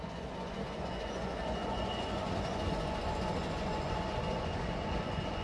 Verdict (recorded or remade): remade